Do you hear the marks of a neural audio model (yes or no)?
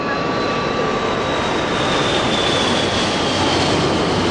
no